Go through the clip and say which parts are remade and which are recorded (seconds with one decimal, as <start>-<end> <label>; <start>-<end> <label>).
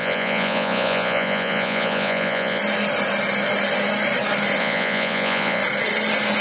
0.0-2.6 remade; 2.6-4.6 recorded; 4.6-5.6 remade; 5.6-6.4 recorded